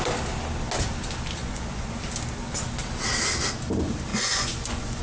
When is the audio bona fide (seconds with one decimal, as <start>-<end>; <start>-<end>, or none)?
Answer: 0.0-1.4; 2.0-4.1